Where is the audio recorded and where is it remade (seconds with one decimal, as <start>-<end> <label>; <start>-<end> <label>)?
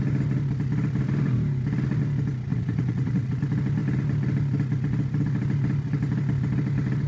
0.0-2.5 recorded; 2.5-3.4 remade; 3.4-7.1 recorded